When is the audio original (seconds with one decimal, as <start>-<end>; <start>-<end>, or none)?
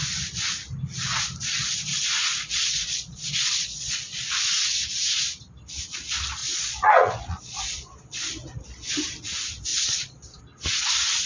0.0-1.9; 4.2-6.4; 8.3-9.7; 10.4-11.3